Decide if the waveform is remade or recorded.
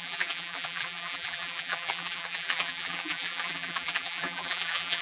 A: remade